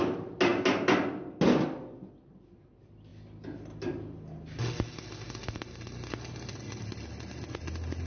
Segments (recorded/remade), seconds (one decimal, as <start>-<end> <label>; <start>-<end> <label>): 0.0-8.1 recorded